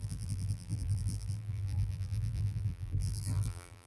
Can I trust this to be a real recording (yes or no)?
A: no